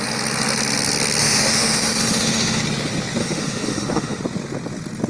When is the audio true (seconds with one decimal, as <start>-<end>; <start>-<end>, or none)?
0.0-1.2; 2.6-3.2; 4.2-5.1